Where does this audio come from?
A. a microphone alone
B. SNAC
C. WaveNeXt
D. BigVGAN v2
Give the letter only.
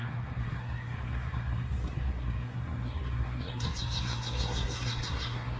B